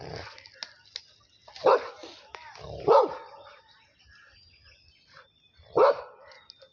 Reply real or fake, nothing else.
real